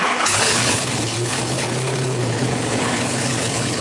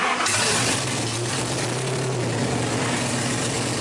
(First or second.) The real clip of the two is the second